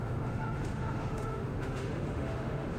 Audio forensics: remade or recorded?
remade